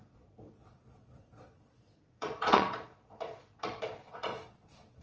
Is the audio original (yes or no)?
no